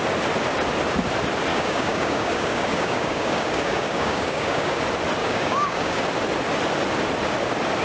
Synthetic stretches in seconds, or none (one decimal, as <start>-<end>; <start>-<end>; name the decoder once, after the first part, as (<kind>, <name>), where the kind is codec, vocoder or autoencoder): 1.5-4.8 (codec, DAC); 5.2-6.0